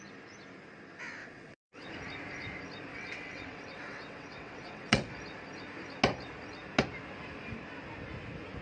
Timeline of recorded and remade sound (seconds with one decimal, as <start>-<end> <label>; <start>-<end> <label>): 0.0-1.2 recorded; 1.2-1.9 remade; 1.9-2.9 recorded; 2.9-5.1 remade; 5.1-8.6 recorded